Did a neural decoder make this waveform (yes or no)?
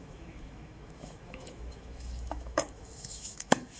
yes